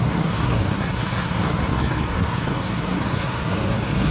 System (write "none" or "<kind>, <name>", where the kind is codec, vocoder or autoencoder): codec, SNAC